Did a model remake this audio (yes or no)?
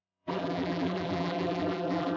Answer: yes